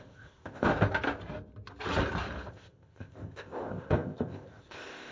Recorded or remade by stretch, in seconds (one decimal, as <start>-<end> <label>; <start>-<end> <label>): 0.0-0.7 remade; 0.7-2.5 recorded; 2.5-5.1 remade